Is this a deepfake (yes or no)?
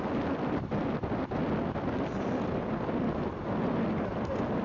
no